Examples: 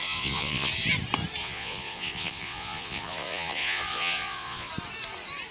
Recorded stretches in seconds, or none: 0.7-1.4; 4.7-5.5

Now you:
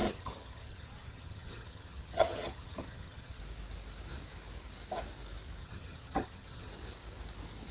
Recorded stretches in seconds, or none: 3.4-5.6; 6.7-7.7

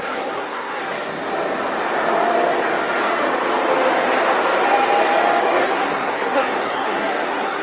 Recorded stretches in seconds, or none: 0.8-5.4

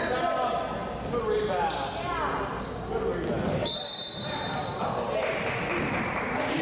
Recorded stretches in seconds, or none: 0.0-6.6

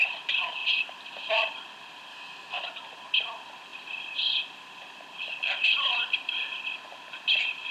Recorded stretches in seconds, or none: 0.0-2.1; 2.6-7.7

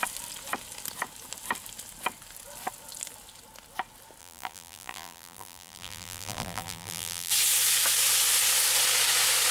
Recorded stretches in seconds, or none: 0.0-4.2; 7.3-9.5

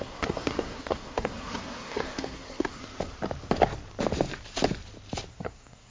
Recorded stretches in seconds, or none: 2.8-5.3

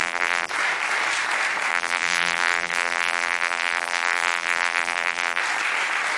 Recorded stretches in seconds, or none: 0.5-1.7; 5.4-6.2